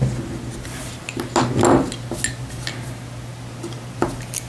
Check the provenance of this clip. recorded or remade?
recorded